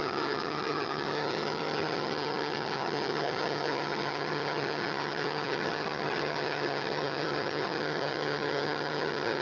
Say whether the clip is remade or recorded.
remade